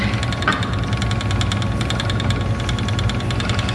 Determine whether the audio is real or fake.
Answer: real